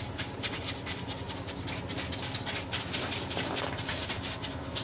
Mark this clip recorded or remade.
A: recorded